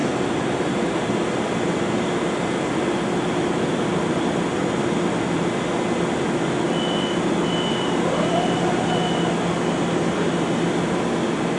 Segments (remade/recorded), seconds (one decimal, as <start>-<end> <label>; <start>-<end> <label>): 0.0-1.0 remade; 1.0-11.6 recorded